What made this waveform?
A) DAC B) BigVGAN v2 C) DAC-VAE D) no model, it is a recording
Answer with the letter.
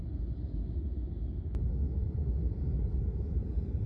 D